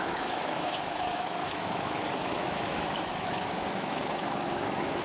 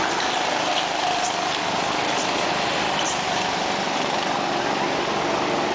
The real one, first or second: second